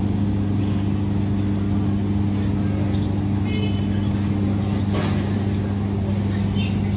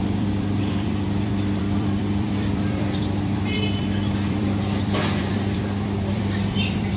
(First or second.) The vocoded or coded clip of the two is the second